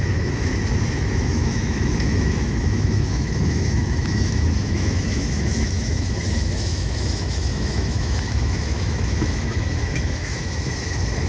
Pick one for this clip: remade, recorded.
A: remade